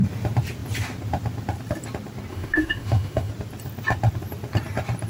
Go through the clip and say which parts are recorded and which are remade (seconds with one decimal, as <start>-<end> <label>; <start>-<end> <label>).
0.0-2.3 recorded; 2.3-3.3 remade; 3.3-5.1 recorded

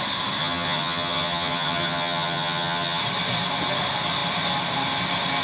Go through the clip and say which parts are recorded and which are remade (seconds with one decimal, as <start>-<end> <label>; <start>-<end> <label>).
0.0-0.4 recorded; 0.4-3.0 remade; 3.0-5.4 recorded

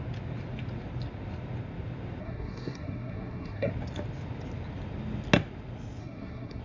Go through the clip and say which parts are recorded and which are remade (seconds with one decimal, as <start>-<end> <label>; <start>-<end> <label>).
0.0-2.2 recorded; 2.2-3.7 remade; 3.7-6.0 recorded; 6.0-6.6 remade

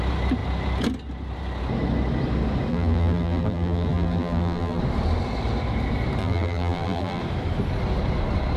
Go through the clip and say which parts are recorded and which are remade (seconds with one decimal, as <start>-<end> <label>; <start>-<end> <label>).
0.0-2.7 recorded; 2.7-4.8 remade; 4.8-6.2 recorded; 6.2-7.2 remade; 7.2-8.6 recorded

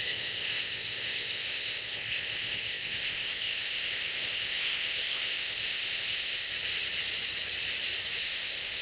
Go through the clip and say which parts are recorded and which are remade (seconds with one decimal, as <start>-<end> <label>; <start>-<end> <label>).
0.0-6.5 remade; 6.5-8.2 recorded; 8.2-8.8 remade

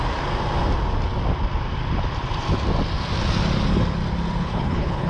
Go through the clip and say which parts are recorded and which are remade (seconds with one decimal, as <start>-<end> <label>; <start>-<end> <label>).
0.0-4.4 recorded; 4.4-5.1 remade

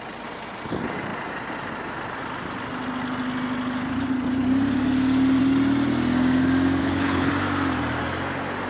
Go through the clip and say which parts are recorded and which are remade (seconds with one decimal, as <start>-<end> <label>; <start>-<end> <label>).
0.0-6.8 recorded; 6.8-7.3 remade; 7.3-8.7 recorded